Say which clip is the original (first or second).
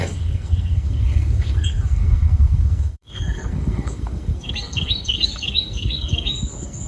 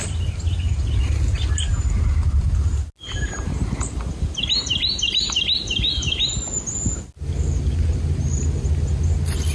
second